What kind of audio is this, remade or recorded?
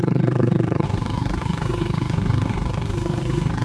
remade